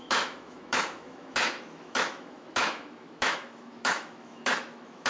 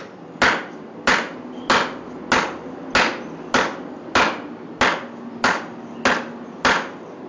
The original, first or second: second